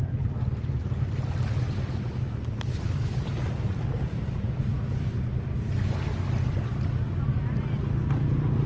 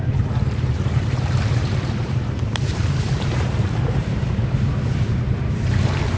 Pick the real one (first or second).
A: first